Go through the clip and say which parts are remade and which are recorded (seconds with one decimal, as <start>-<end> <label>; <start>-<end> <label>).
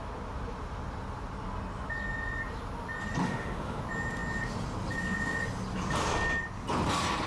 0.0-3.2 recorded; 3.2-3.8 remade; 3.8-7.3 recorded